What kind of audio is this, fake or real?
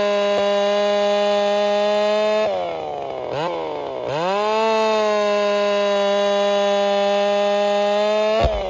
real